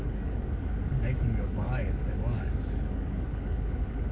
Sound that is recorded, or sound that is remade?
remade